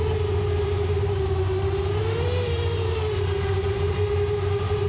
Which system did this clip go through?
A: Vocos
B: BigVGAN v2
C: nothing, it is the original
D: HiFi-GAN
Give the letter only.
B